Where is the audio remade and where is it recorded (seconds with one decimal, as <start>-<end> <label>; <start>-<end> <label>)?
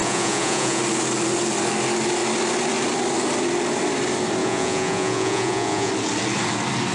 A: 0.0-0.8 remade; 0.8-4.4 recorded; 4.4-5.9 remade; 5.9-6.9 recorded